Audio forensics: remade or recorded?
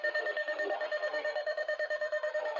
remade